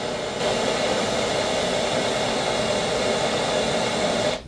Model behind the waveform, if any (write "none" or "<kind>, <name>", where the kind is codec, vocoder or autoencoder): none